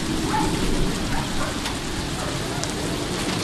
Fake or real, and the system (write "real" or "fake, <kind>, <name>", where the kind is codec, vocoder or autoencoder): real